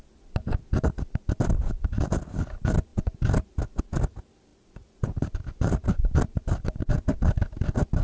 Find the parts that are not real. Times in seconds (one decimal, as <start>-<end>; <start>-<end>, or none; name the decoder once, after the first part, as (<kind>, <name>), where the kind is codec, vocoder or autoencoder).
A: 2.9-3.8 (vocoder, BigVGAN v2); 4.5-6.8